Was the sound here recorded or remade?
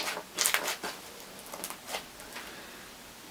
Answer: recorded